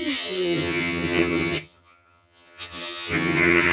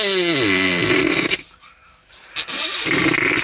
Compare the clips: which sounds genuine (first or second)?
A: second